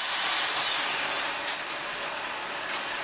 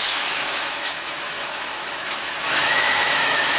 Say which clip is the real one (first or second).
first